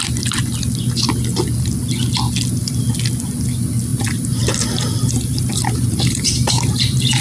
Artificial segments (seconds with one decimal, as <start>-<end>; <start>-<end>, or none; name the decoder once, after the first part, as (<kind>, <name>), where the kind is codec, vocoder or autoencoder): 3.9-7.2 (vocoder, BigVGAN v2)